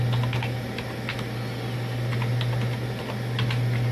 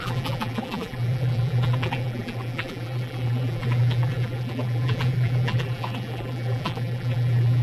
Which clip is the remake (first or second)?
second